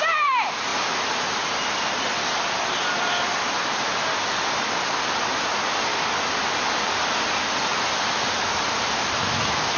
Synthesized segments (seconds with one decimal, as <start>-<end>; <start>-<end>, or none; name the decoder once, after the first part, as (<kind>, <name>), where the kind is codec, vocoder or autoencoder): 5.9-7.0 (vocoder, BigVGAN v2)